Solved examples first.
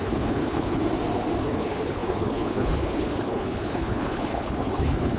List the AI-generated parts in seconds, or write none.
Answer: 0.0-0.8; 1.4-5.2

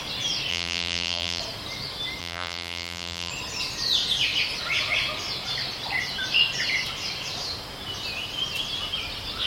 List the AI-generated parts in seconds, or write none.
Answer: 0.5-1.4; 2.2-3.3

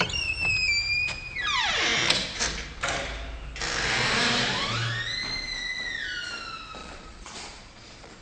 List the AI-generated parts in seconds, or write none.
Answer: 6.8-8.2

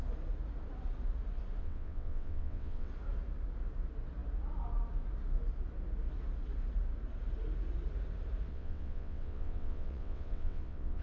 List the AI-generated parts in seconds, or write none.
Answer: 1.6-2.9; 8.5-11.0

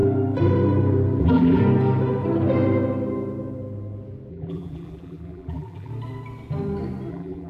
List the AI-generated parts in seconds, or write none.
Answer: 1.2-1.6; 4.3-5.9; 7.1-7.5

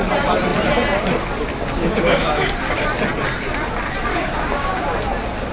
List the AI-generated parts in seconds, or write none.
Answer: 1.8-2.7; 4.1-4.8